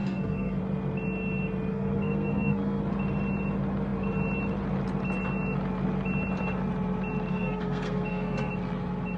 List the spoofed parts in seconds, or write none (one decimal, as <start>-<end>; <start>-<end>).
0.0-0.6; 1.7-2.8; 7.3-8.5